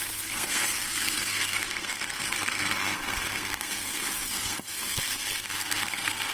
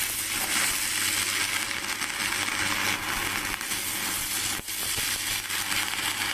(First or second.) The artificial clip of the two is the first